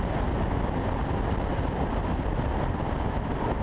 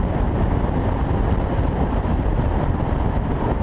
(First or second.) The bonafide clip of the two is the first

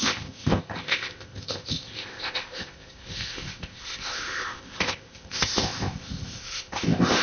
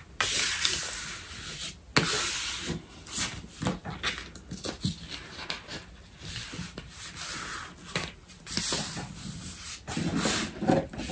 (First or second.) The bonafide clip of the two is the second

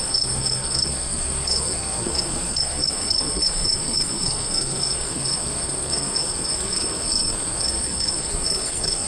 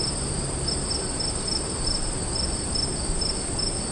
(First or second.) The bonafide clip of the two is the second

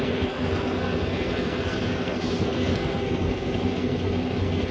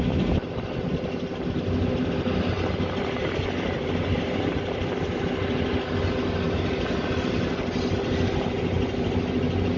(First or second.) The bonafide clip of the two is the second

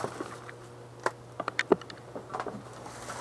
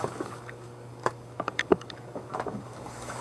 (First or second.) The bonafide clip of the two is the first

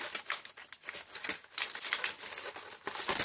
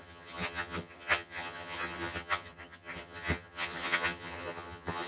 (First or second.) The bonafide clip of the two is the first